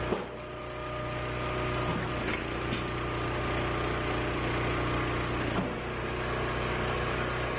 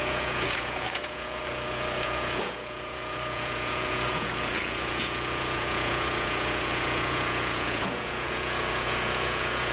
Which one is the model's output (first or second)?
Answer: second